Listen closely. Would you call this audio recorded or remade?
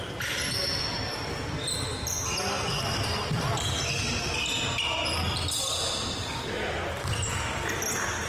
recorded